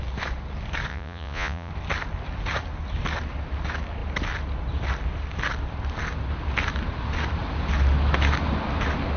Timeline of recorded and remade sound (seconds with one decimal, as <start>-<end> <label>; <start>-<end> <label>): 0.0-0.9 recorded; 0.9-1.7 remade; 1.7-9.2 recorded